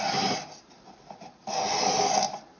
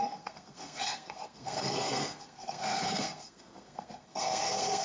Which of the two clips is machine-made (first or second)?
second